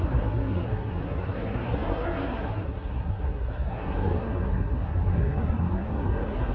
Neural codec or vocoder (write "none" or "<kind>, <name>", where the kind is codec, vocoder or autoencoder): codec, SNAC